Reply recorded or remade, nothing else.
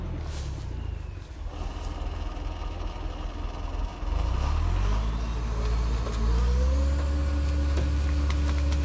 recorded